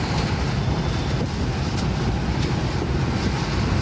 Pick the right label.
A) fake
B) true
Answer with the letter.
B